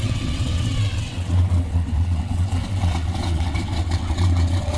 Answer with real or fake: fake